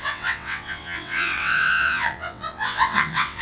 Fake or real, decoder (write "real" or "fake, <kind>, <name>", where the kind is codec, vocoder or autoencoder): fake, vocoder, WaveNeXt